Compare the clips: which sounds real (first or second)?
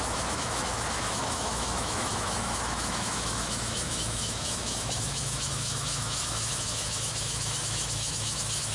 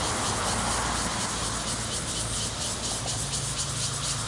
second